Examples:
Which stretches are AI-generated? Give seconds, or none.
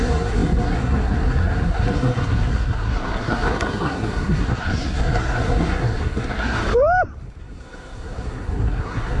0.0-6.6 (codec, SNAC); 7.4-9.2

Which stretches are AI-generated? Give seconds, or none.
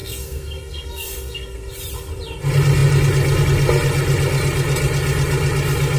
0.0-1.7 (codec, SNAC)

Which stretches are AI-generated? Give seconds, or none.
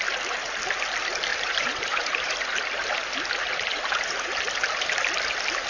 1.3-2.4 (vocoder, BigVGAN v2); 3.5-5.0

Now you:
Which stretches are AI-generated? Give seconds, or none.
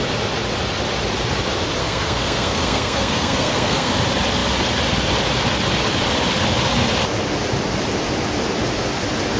1.8-3.9 (codec, SNAC)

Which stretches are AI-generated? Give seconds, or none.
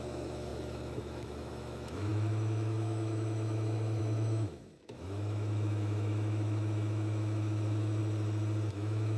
0.0-8.0 (autoencoder, DAC-VAE); 8.7-9.2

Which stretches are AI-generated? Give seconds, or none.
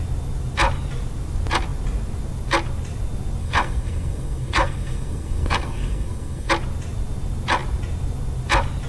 3.4-6.5 (codec, SNAC)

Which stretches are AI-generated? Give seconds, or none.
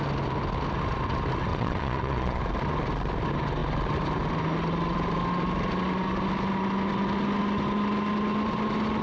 1.5-2.4 (vocoder, Vocos)